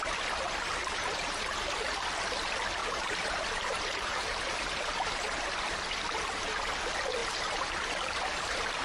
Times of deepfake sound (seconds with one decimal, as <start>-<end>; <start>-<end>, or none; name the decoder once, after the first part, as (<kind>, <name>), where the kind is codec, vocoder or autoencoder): 0.8-1.9 (vocoder, BigVGAN v2); 2.8-5.2; 7.2-8.2